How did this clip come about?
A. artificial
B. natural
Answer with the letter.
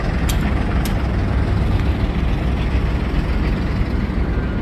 B